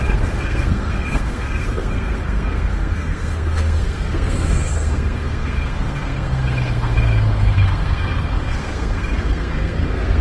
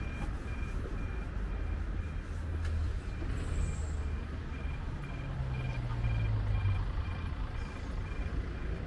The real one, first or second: second